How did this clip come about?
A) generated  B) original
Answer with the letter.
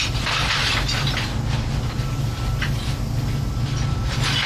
B